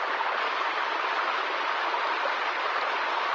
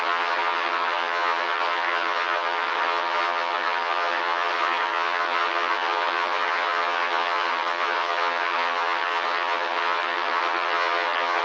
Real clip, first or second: first